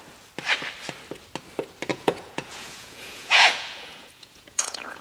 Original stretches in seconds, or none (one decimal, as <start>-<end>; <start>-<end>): 0.0-1.9